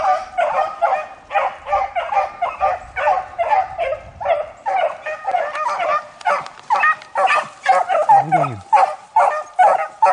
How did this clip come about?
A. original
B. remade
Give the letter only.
A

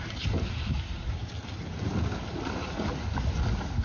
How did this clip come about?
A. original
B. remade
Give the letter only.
A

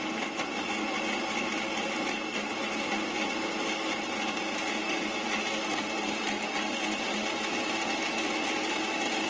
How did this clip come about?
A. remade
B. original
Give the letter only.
B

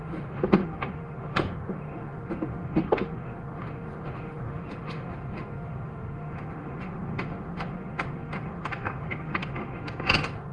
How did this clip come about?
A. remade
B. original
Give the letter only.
A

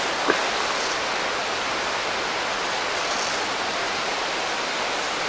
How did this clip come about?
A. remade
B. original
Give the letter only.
B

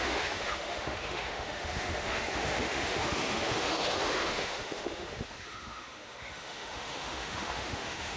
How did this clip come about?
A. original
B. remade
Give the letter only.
B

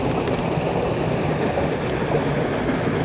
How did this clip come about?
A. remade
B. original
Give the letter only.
B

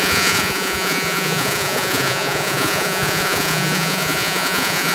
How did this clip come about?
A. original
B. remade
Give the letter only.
B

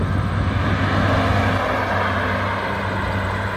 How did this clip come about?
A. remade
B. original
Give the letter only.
B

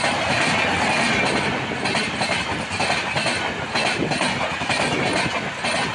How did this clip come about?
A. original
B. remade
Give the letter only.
A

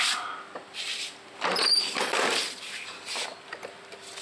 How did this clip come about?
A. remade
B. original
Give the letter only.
A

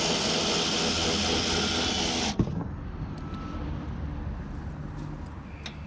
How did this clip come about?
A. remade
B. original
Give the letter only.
B